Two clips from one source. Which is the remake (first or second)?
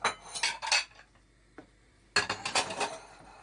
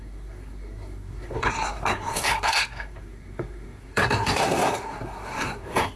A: second